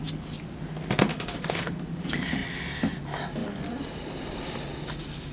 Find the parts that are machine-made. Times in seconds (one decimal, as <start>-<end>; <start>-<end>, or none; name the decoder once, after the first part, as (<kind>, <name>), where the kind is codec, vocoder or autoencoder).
1.1-1.7 (autoencoder, DAC-VAE)